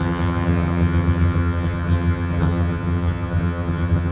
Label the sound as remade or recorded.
remade